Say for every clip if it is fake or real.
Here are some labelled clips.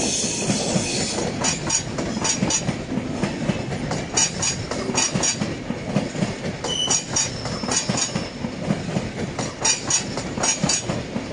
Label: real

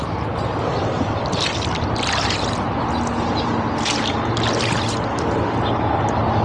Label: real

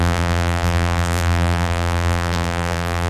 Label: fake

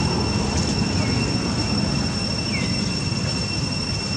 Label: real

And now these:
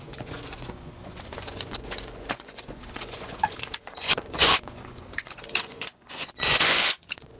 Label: fake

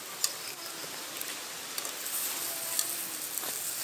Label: real